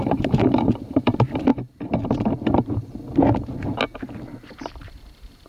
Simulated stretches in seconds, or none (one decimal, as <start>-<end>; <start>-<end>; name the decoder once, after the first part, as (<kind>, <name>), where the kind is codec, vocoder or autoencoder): 0.0-1.5 (vocoder, BigVGAN v2); 4.8-5.5